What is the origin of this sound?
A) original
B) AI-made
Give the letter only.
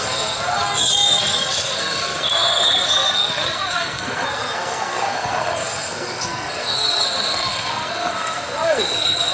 B